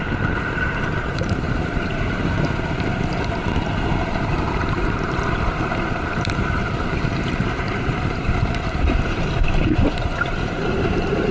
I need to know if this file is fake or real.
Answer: fake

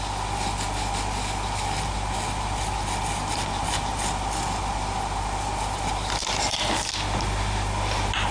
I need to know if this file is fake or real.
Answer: real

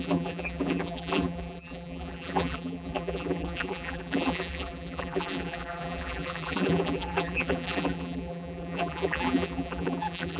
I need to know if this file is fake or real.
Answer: fake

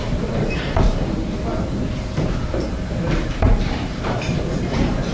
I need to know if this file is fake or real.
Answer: fake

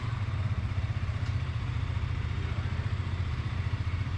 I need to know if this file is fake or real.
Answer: fake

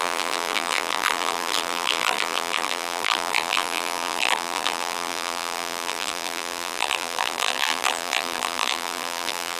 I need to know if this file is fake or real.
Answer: fake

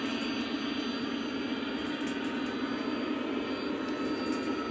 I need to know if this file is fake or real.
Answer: real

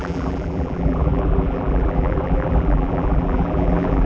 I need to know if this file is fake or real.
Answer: fake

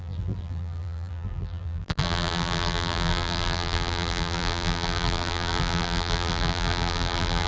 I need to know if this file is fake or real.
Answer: fake